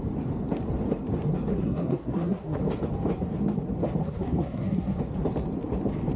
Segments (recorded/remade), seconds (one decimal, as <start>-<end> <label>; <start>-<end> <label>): 0.0-1.5 recorded; 1.5-2.6 remade; 2.6-4.0 recorded; 4.0-5.0 remade; 5.0-6.2 recorded